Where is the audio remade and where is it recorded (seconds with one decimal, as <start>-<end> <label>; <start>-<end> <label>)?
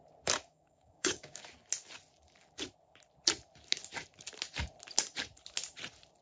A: 0.0-0.5 recorded; 0.5-1.4 remade; 1.4-6.2 recorded